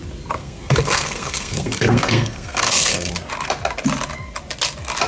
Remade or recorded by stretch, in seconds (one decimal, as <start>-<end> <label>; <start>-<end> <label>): 0.0-0.4 recorded; 0.4-3.1 remade; 3.1-5.1 recorded